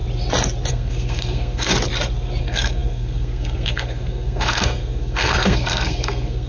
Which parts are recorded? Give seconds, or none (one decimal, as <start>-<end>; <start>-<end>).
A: 0.0-0.7; 1.7-2.4